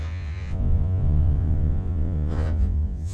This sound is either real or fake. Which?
fake